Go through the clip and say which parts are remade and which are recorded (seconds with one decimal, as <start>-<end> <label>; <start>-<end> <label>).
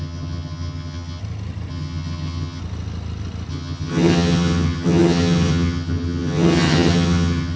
0.0-1.2 remade; 1.2-1.7 recorded; 1.7-2.6 remade; 2.6-3.5 recorded; 3.5-7.6 remade